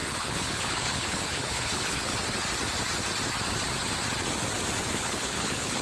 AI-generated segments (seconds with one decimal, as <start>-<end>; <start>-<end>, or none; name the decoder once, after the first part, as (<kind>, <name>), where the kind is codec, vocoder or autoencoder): 0.0-2.1 (codec, HILCodec); 4.9-5.8